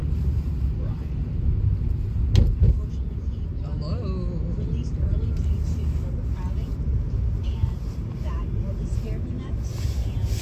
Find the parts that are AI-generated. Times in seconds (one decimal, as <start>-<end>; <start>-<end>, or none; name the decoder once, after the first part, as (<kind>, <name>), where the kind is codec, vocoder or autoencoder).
none